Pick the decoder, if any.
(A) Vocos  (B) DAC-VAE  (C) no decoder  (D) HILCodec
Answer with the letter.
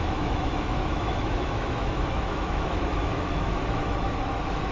B